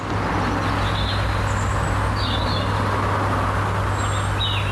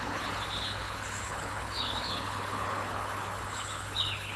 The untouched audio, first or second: first